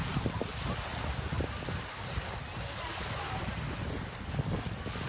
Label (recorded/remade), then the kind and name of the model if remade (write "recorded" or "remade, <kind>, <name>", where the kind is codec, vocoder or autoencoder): recorded